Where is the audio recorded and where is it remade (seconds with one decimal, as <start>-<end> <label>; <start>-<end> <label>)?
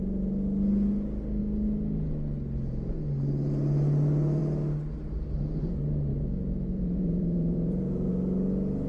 0.0-6.1 recorded; 6.1-8.1 remade; 8.1-8.9 recorded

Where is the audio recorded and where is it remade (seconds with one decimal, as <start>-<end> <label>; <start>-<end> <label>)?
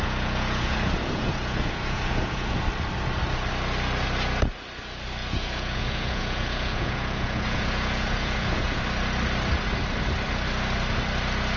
0.0-2.6 remade; 2.6-5.2 recorded; 5.2-8.8 remade; 8.8-11.6 recorded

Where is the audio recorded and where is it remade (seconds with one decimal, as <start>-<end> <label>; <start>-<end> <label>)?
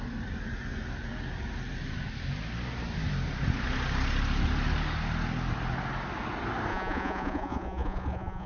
0.0-6.7 recorded; 6.7-8.5 remade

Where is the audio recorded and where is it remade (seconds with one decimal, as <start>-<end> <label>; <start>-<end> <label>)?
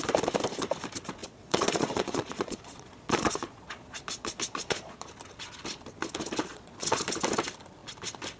0.0-1.2 recorded; 1.2-5.1 remade; 5.1-6.5 recorded; 6.5-7.0 remade; 7.0-8.4 recorded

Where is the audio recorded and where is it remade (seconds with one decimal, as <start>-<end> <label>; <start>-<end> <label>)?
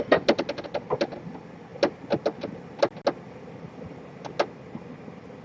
0.0-5.4 recorded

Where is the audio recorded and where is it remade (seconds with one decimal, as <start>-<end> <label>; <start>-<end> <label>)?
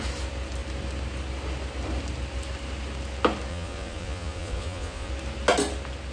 0.0-3.5 recorded; 3.5-5.1 remade; 5.1-6.1 recorded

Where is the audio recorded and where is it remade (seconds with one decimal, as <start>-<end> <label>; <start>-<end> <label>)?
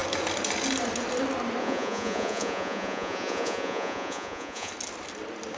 0.0-1.6 recorded; 1.6-4.7 remade; 4.7-5.6 recorded